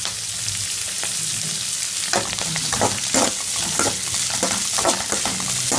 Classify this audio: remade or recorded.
recorded